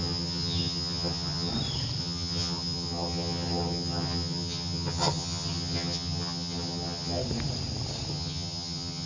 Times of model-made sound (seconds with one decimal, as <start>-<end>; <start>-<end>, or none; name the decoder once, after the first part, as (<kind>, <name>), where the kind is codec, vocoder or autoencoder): 0.0-1.5 (vocoder, HiFi-GAN); 2.0-7.2; 8.1-9.1